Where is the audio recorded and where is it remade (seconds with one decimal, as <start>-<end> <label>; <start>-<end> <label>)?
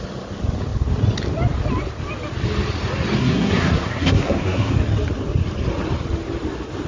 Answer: 0.0-3.2 recorded; 3.2-4.7 remade; 4.7-6.9 recorded